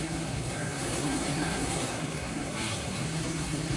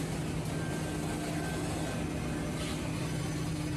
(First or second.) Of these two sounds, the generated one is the first